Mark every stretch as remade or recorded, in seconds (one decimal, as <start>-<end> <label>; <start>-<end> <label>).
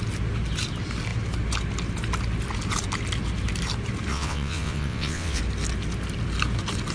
0.0-4.1 recorded; 4.1-5.4 remade; 5.4-6.9 recorded